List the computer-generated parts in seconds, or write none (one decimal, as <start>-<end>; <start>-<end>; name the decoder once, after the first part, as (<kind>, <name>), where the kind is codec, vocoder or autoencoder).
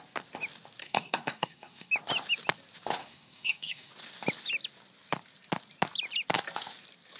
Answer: 0.8-1.9 (codec, SNAC); 3.0-3.9